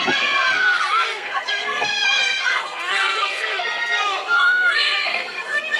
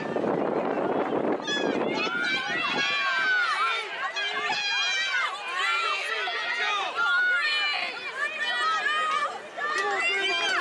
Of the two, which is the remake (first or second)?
first